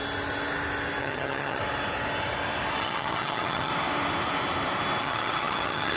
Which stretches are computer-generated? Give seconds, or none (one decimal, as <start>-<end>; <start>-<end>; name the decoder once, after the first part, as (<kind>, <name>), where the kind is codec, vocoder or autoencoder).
1.0-1.6 (vocoder, HiFi-GAN); 2.8-3.7; 5.0-6.0